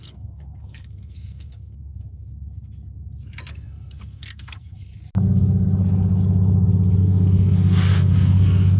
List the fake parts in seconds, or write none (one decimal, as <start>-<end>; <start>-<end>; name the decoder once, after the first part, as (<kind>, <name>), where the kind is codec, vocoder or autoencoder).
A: 0.0-2.3 (codec, SNAC); 3.5-4.9; 7.0-8.8